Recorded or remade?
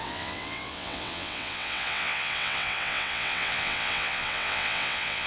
remade